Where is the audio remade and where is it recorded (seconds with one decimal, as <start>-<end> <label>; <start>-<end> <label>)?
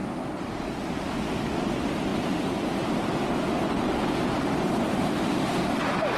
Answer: 0.0-6.2 recorded